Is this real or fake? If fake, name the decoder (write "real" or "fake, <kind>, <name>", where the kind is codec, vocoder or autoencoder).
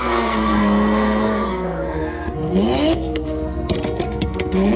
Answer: fake, codec, SNAC